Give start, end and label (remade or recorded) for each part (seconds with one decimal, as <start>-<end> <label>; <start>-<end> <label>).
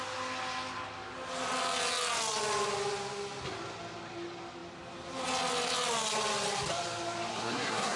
0.0-7.3 recorded; 7.3-8.0 remade